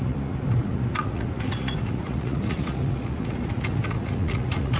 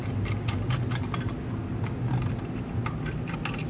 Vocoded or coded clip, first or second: first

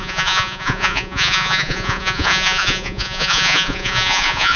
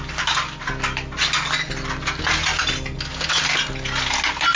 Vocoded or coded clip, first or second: first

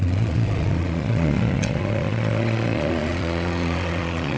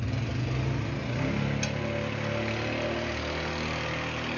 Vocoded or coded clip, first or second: first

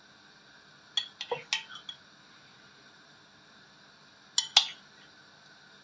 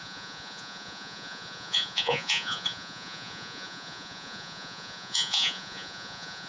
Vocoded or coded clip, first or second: second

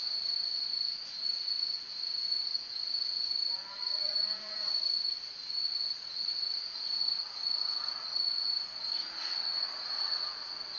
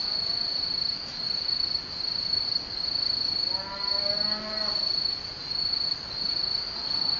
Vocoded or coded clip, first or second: first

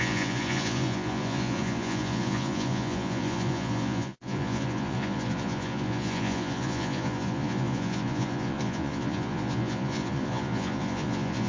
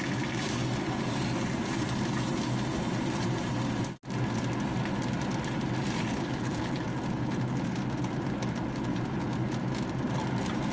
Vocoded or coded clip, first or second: first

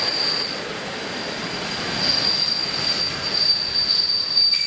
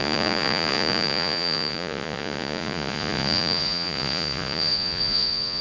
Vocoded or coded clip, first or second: second